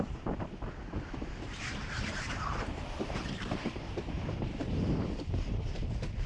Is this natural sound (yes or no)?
no